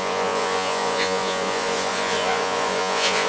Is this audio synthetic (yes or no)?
yes